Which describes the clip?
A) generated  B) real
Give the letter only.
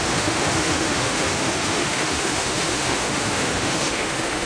A